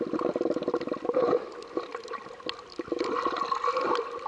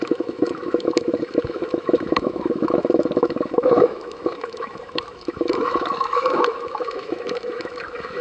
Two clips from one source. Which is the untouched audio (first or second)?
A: first